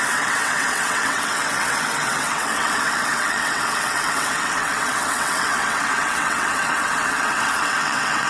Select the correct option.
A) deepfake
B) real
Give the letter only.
A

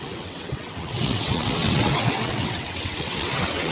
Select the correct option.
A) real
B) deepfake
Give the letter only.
B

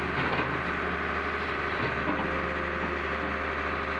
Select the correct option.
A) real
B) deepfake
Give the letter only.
A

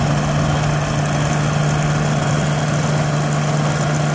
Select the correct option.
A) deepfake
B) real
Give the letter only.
B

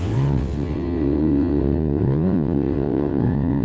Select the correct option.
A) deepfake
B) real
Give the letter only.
A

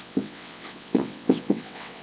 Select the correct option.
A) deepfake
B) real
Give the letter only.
A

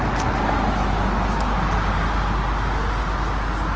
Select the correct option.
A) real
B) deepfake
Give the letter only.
A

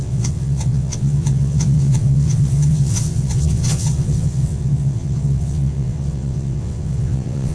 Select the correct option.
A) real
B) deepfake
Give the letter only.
B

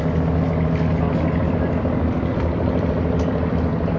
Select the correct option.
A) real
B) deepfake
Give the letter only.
A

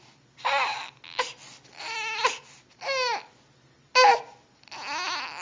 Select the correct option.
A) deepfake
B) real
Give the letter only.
B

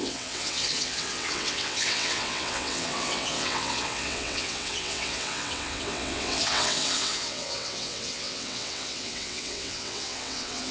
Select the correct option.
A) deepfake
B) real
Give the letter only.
A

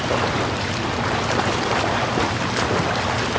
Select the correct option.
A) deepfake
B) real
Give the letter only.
B